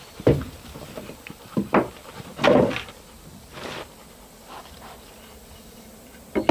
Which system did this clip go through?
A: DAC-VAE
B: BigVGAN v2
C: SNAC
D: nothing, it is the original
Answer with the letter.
B